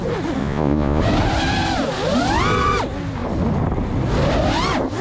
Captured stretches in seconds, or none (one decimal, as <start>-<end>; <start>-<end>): 0.0-0.4; 1.0-5.0